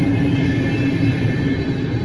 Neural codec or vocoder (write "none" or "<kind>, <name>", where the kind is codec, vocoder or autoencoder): none